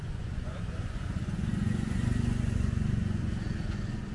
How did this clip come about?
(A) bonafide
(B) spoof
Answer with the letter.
B